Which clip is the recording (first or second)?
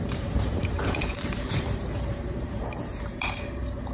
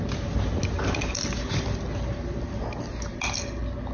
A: second